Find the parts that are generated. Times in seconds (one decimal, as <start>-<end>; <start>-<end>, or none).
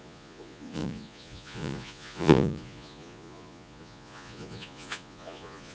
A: 0.0-5.7